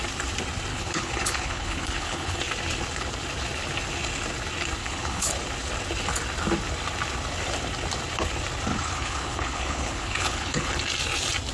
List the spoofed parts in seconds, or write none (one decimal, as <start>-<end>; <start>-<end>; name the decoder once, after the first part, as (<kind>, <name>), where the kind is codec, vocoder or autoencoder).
0.7-2.4 (codec, HILCodec); 4.8-5.3; 8.7-10.7